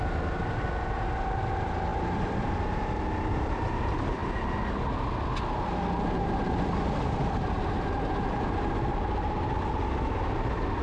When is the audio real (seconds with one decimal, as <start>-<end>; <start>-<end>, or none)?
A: 0.0-10.8